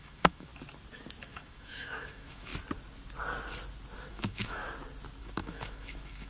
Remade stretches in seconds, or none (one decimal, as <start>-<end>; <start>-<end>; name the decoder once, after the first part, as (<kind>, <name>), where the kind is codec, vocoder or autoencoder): 0.0-0.5 (autoencoder, DAC-VAE); 1.2-2.5; 4.1-4.6; 5.2-6.3